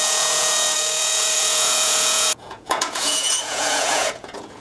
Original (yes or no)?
no